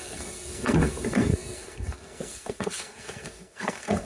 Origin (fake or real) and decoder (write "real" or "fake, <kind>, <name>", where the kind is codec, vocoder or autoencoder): fake, codec, SNAC